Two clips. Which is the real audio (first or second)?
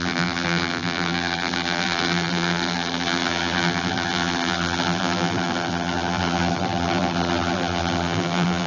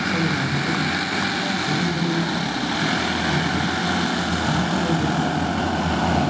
second